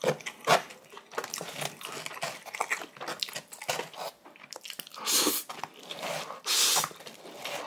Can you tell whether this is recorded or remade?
recorded